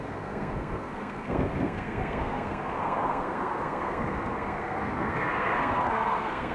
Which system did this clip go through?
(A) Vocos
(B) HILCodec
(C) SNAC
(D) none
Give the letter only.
C